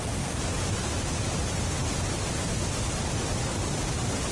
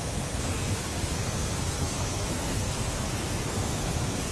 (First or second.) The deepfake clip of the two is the second